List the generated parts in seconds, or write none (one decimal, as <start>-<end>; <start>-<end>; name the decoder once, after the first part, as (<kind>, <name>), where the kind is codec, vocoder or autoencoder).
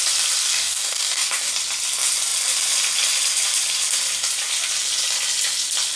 0.5-1.5 (codec, DAC)